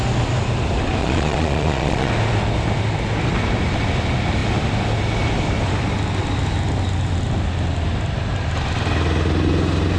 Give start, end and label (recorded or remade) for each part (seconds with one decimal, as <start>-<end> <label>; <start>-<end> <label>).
0.0-1.0 recorded; 1.0-2.1 remade; 2.1-10.0 recorded